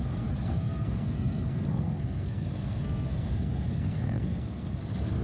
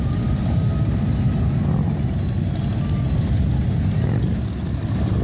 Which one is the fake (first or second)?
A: first